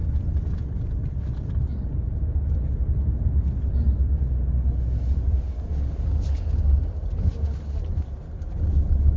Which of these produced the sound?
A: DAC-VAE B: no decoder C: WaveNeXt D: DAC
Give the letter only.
B